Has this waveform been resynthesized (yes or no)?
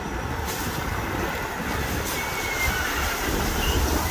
no